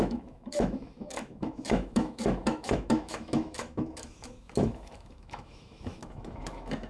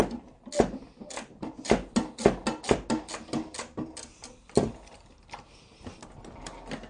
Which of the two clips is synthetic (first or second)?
first